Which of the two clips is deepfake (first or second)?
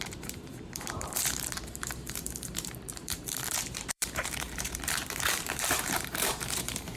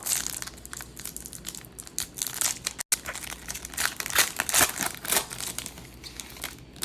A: first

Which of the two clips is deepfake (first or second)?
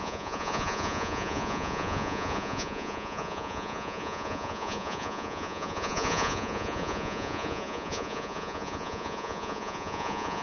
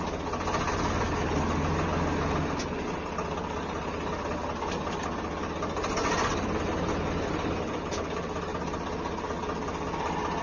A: first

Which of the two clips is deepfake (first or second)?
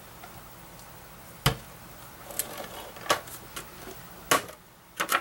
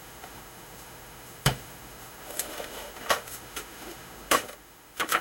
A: second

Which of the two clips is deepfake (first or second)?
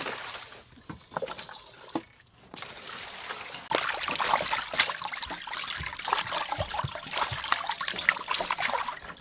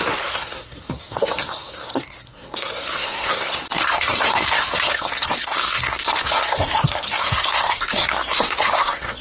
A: second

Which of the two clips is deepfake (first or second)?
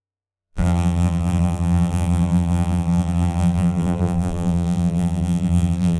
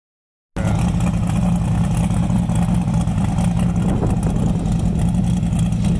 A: first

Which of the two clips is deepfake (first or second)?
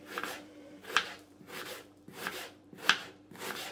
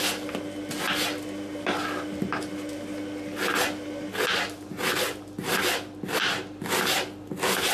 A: first